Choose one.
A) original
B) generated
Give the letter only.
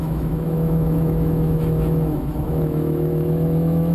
B